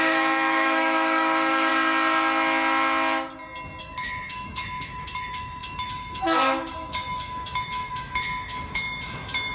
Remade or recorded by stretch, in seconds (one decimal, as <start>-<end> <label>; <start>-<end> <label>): 0.0-1.7 remade; 1.7-3.8 recorded; 3.8-9.5 remade